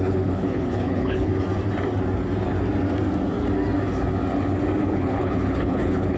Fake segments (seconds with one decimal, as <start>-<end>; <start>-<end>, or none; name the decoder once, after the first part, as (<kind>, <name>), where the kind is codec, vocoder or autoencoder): 0.0-1.3 (codec, HILCodec); 4.8-6.2